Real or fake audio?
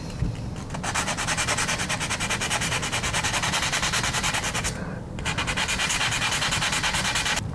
real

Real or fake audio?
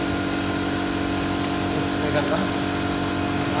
real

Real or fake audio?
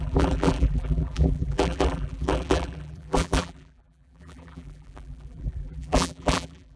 fake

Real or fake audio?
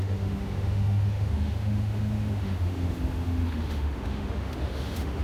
fake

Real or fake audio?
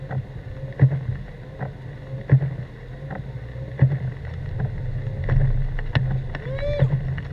real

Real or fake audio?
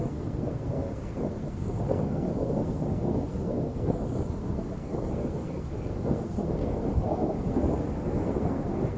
fake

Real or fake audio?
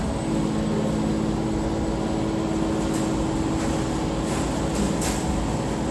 real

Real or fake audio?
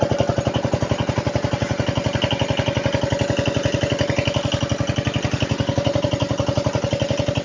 real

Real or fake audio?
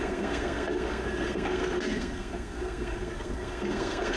fake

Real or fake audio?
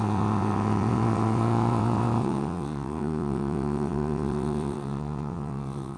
fake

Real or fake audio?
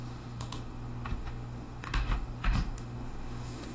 fake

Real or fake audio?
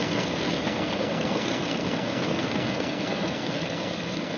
fake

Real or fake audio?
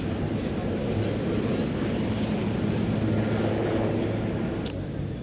real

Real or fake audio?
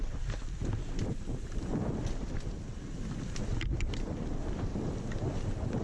real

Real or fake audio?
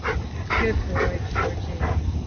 real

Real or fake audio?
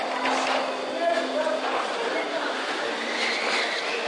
real